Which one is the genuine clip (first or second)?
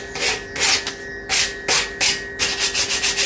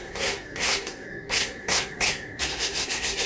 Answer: first